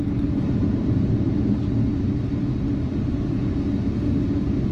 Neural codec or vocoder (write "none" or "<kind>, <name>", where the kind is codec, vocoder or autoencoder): none